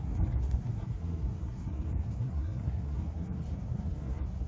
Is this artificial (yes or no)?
yes